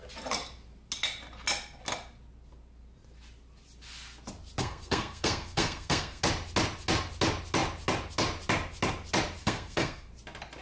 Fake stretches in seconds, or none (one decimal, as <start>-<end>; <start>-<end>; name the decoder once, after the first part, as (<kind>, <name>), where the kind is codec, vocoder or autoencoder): 4.6-6.2 (codec, SNAC); 9.4-10.1

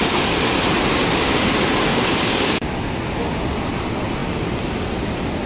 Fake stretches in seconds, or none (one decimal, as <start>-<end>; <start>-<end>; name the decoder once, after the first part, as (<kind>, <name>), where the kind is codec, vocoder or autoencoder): 1.9-2.7 (codec, DAC)

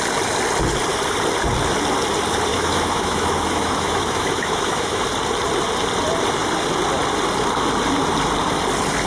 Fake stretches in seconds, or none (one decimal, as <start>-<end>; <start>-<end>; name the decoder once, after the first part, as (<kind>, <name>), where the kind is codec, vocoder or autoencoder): 2.5-5.0 (autoencoder, DAC-VAE)

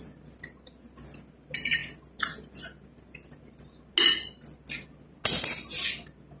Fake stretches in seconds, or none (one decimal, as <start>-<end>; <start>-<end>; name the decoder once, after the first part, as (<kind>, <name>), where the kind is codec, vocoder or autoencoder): none

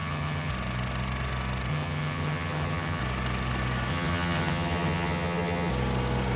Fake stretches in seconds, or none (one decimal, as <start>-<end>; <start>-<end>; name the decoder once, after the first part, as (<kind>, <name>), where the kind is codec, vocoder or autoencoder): 0.0-0.5 (vocoder, HiFi-GAN); 1.7-3.0; 3.9-5.7

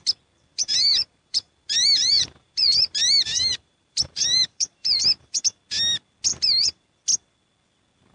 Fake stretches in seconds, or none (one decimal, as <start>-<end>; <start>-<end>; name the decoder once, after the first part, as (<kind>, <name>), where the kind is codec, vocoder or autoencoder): 0.5-5.4 (vocoder, BigVGAN v2); 6.3-6.9